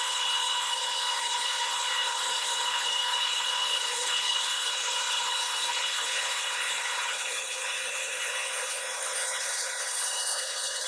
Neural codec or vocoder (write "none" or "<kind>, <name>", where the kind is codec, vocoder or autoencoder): codec, HILCodec